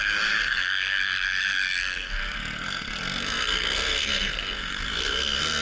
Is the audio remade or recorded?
remade